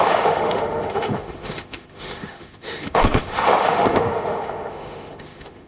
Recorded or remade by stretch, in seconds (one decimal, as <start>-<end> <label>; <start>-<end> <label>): 0.0-5.7 remade